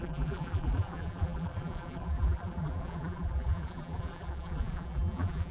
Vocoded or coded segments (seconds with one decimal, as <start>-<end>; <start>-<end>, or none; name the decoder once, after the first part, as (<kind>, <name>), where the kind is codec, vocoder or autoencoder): 0.0-5.5 (vocoder, BigVGAN v2)